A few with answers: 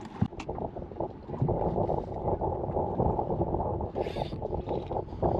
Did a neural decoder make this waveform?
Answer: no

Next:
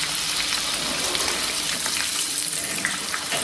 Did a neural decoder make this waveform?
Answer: yes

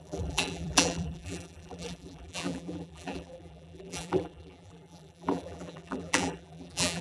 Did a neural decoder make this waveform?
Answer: yes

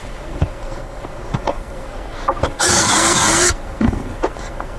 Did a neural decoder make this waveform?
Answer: yes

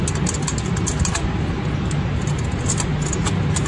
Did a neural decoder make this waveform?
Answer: no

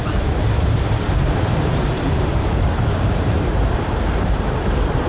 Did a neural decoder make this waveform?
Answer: yes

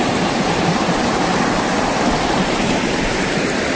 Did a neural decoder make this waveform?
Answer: yes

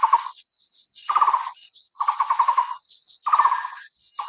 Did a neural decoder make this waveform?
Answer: no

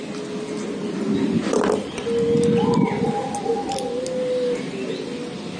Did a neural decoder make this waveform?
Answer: no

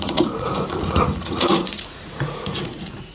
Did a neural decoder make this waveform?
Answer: yes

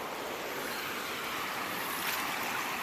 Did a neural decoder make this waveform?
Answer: no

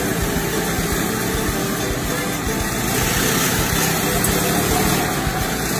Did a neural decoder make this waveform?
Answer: no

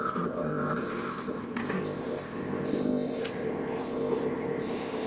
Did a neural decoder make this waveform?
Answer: yes